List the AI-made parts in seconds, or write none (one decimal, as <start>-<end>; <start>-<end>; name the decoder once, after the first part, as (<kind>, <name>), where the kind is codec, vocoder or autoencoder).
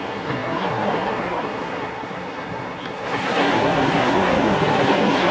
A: 0.0-5.3 (codec, SNAC)